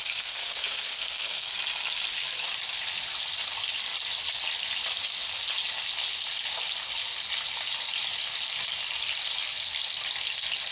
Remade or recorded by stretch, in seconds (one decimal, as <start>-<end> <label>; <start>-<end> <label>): 0.0-1.5 remade; 1.5-10.7 recorded